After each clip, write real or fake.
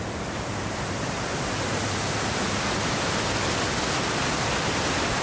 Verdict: real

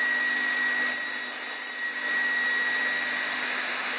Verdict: real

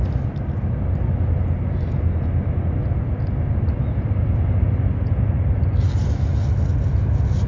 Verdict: real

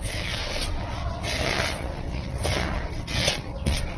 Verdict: fake